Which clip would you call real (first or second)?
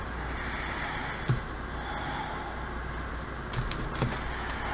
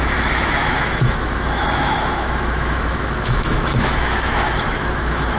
first